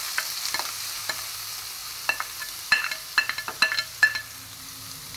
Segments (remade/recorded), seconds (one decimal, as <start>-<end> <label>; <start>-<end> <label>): 0.0-5.2 recorded